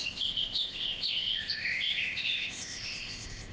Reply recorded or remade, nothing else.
remade